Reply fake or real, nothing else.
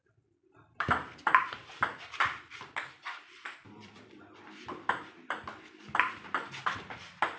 fake